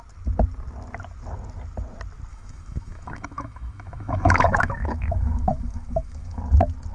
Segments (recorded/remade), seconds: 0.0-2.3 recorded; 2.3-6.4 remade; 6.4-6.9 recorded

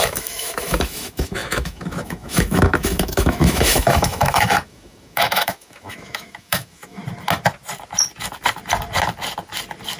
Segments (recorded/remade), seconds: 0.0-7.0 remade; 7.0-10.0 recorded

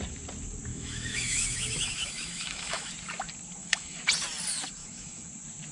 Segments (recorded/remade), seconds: 0.0-0.7 recorded; 0.7-2.9 remade; 2.9-3.6 recorded; 3.6-4.1 remade; 4.1-4.8 recorded; 4.8-5.3 remade; 5.3-5.7 recorded